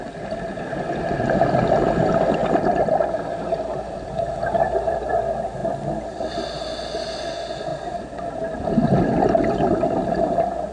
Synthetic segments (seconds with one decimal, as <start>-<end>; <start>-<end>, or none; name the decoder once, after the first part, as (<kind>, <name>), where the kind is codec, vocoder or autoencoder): 2.4-5.1 (vocoder, BigVGAN v2); 5.6-6.3